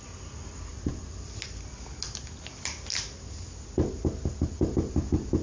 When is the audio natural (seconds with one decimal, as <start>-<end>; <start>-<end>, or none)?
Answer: 0.0-5.4